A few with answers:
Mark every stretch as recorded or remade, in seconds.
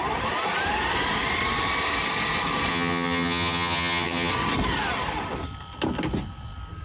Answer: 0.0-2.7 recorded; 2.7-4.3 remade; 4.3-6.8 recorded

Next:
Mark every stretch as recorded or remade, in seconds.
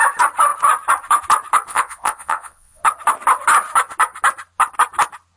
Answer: 0.0-1.7 recorded; 1.7-2.8 remade; 2.8-5.4 recorded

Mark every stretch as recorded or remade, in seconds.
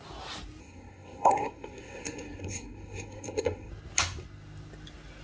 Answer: 0.0-0.6 recorded; 0.6-3.7 remade; 3.7-5.2 recorded